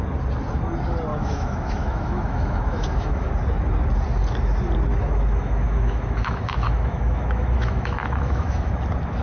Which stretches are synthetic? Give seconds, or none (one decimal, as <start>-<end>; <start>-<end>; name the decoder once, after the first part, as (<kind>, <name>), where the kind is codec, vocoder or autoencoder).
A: 1.1-3.3 (autoencoder, DAC-VAE); 4.9-8.7